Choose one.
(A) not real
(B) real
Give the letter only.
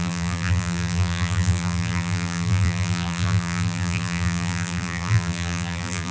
A